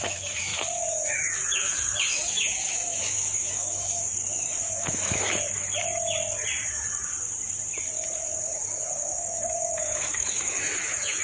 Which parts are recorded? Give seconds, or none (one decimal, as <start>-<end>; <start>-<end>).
0.5-1.1; 6.2-9.2